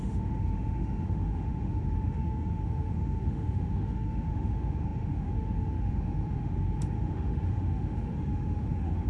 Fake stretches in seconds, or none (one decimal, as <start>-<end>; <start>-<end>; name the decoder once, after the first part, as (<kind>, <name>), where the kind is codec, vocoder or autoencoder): 0.0-9.1 (autoencoder, DAC-VAE)